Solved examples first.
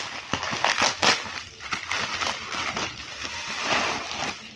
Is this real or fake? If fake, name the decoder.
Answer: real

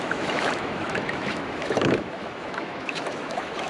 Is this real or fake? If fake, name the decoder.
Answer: fake, autoencoder, DAC-VAE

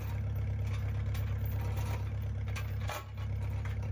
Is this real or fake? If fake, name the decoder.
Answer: real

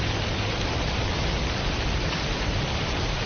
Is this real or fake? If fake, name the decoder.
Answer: fake, vocoder, BigVGAN v2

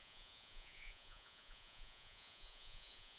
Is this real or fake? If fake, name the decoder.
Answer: fake, vocoder, Vocos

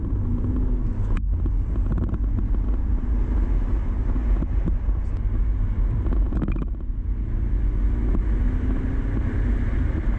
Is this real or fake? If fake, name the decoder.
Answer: real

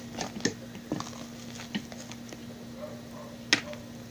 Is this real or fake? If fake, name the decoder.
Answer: real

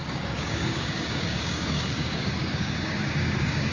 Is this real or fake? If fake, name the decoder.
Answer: fake, codec, DAC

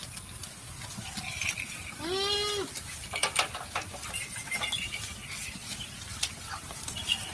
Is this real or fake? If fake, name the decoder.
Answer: real